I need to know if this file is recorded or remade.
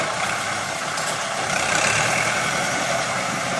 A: remade